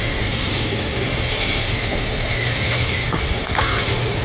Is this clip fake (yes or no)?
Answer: yes